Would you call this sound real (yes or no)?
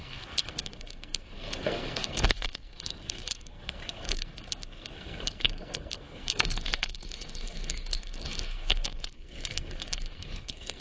no